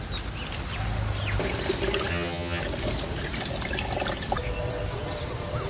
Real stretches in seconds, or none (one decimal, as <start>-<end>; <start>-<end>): 0.0-2.1; 2.6-5.7